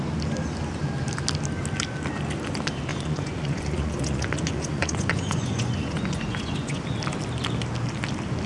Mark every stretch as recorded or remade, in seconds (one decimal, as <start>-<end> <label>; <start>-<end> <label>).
0.0-2.9 recorded; 2.9-6.8 remade; 6.8-8.5 recorded